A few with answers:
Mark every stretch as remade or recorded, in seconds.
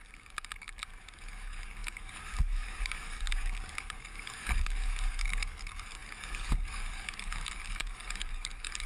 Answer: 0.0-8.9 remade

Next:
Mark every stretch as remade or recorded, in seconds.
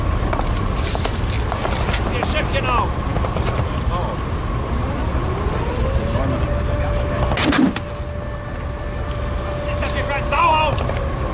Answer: 0.0-11.3 recorded